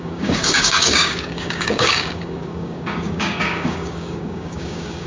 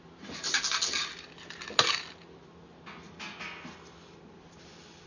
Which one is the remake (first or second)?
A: first